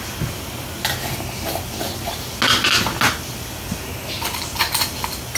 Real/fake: real